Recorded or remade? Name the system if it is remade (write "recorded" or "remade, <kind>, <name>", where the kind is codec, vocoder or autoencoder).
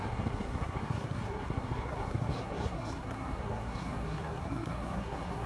remade, codec, SNAC